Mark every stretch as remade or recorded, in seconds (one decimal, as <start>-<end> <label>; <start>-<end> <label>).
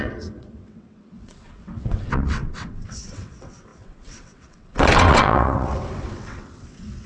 0.0-7.1 remade